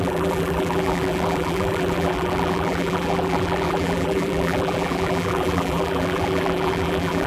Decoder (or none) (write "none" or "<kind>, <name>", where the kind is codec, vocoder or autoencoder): vocoder, BigVGAN v2